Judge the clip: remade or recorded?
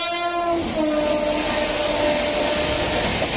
recorded